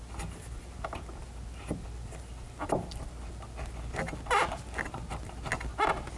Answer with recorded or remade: recorded